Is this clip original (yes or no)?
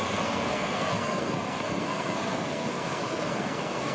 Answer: no